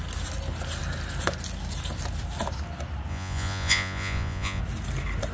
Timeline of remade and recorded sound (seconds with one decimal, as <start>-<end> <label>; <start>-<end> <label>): 0.0-3.1 recorded; 3.1-4.6 remade; 4.6-5.3 recorded